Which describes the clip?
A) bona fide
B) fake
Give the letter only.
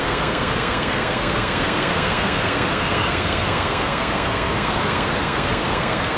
B